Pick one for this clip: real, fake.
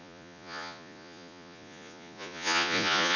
fake